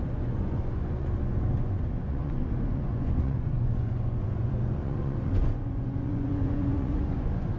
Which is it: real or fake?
fake